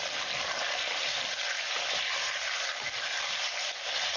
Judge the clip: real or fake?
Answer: real